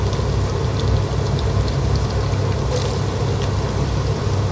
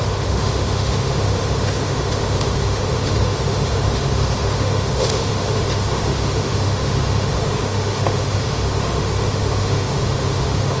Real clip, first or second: first